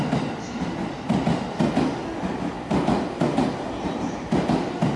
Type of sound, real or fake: real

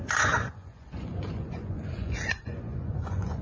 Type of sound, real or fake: fake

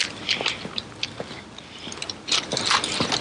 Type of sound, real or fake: real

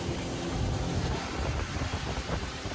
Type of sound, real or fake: real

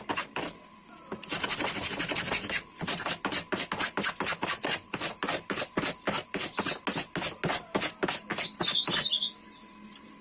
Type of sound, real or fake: real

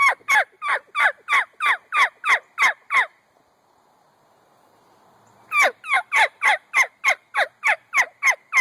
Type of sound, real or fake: real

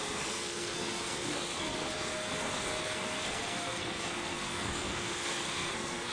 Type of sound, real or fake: fake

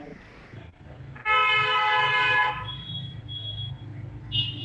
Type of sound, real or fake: real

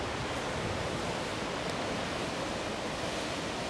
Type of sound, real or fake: real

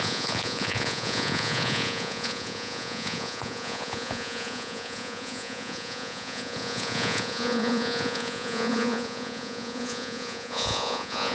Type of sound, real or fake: fake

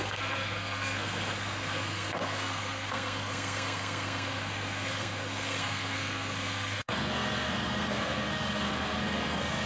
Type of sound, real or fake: fake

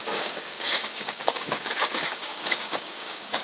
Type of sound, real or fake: fake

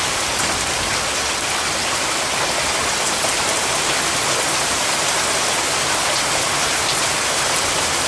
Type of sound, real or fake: real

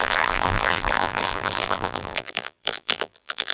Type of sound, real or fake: fake